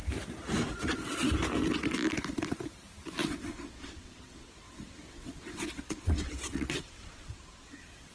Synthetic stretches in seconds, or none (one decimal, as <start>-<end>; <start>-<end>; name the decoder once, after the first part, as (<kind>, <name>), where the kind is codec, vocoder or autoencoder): 3.2-8.1 (vocoder, WaveNeXt)